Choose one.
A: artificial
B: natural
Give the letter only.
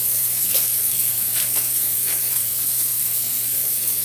A